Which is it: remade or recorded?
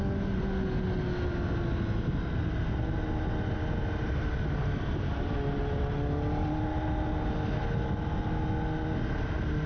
recorded